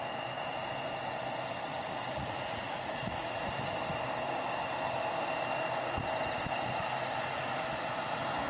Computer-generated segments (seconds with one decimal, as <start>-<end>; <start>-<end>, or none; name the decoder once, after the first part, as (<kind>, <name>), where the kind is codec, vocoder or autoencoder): 1.7-3.5 (vocoder, Vocos)